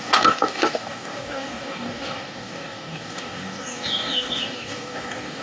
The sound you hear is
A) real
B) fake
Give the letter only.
B